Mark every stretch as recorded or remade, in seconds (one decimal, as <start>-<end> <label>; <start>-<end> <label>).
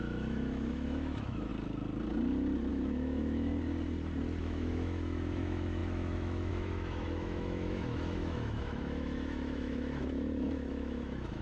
0.0-1.5 remade; 1.5-2.7 recorded; 2.7-3.5 remade; 3.5-4.4 recorded; 4.4-11.4 remade